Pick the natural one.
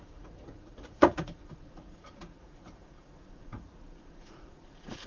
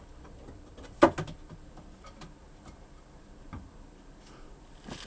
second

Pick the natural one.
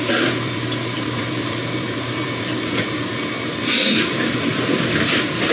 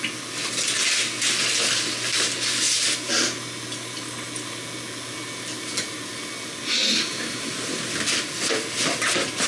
second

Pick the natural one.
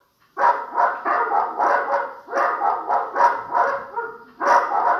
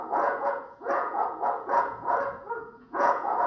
first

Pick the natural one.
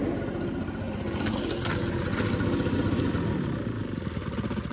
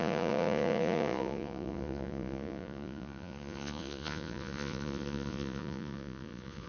first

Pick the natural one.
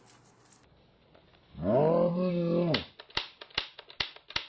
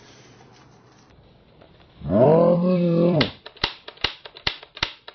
first